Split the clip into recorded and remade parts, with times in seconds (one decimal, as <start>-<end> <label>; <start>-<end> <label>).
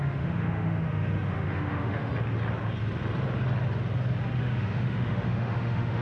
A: 0.0-2.1 remade; 2.1-4.4 recorded; 4.4-6.0 remade